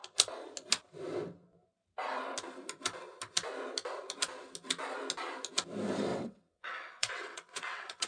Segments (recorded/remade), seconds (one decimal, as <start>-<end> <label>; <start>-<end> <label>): 0.0-6.1 recorded; 6.1-8.1 remade